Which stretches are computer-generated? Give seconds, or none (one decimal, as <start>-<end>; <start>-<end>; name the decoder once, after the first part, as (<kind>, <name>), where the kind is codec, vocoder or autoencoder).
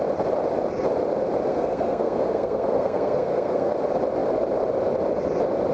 1.5-3.7 (codec, SNAC)